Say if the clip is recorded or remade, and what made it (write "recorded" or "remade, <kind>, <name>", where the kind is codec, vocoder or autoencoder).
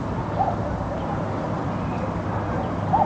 recorded